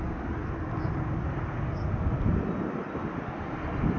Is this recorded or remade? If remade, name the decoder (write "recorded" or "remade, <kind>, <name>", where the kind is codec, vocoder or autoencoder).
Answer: recorded